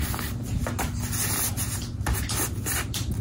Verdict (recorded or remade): recorded